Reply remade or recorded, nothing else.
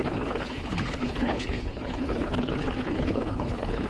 remade